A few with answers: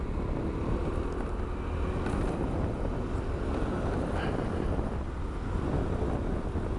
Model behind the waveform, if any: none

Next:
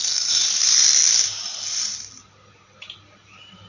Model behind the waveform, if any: none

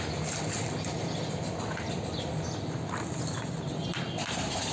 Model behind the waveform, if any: none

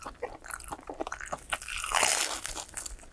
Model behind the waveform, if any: none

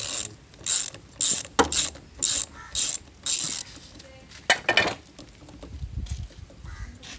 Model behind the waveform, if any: none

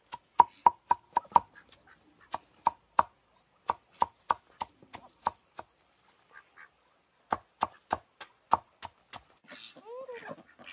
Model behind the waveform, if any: none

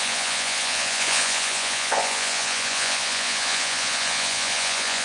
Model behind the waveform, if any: vocoder, Vocos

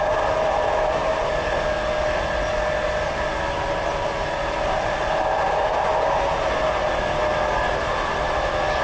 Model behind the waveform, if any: none